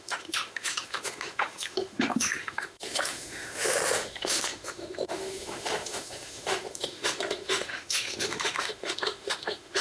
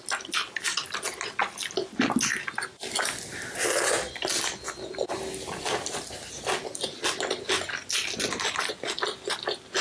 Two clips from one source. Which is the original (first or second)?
second